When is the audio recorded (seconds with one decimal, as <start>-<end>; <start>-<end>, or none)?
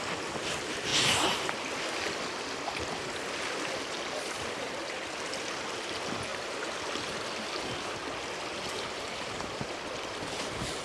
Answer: 0.0-10.8